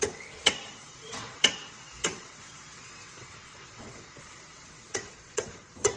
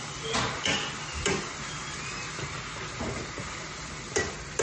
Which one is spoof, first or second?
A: first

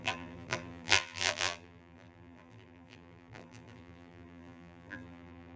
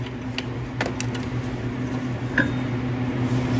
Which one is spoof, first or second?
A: first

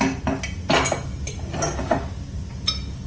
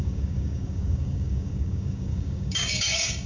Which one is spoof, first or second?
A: second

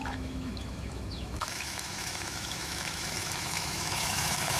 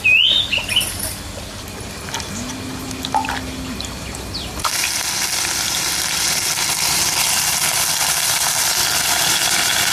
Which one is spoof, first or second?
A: first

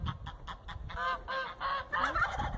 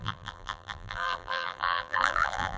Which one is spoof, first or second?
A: second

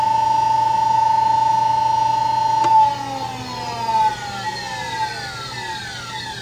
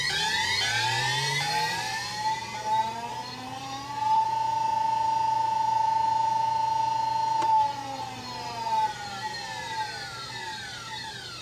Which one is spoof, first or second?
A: second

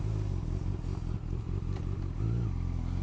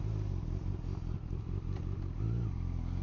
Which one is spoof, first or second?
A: second